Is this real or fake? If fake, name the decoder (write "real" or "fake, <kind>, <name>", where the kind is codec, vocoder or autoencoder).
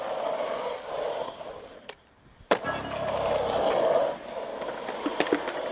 real